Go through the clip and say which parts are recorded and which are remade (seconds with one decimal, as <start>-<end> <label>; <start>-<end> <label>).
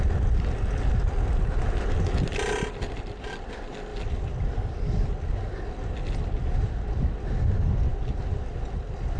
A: 0.0-9.2 recorded